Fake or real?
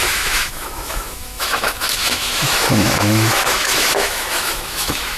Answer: fake